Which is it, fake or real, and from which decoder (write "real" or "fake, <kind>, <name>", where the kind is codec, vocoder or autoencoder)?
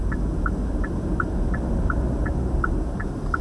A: real